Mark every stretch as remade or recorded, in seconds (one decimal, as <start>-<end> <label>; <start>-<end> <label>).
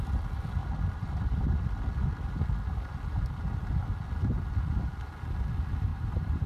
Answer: 0.0-5.9 recorded; 5.9-6.5 remade